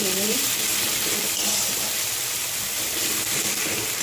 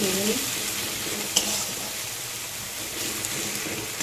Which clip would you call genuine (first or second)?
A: second